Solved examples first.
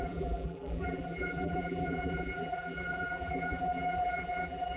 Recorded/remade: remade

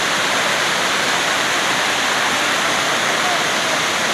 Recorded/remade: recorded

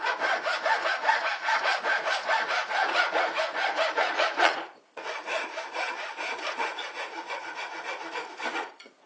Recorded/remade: remade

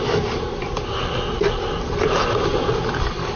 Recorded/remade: recorded